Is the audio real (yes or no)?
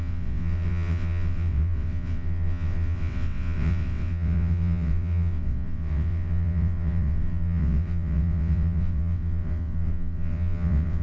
no